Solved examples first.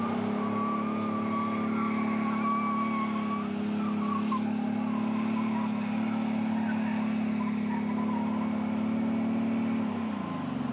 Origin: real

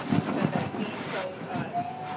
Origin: real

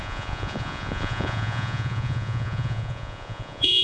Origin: fake